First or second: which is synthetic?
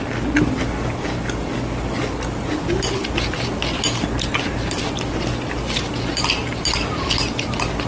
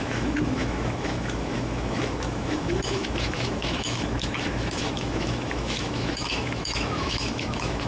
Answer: second